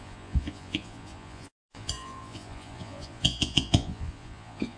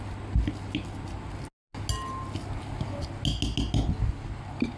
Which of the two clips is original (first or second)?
second